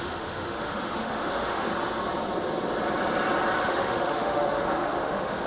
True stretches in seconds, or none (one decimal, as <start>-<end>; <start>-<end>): 1.7-3.6